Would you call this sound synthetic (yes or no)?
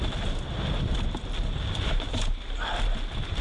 no